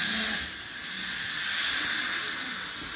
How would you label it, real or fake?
real